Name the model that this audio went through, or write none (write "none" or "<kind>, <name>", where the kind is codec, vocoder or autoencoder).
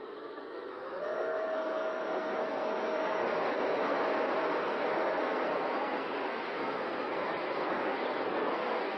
codec, SNAC